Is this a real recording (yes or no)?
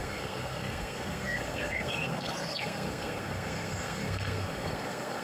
no